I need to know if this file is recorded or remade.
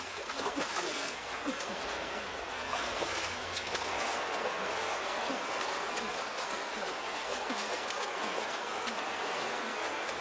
remade